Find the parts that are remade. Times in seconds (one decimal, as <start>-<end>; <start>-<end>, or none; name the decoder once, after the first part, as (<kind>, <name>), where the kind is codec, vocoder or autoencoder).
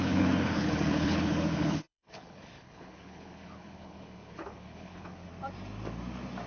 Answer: 0.0-5.3 (codec, HILCodec)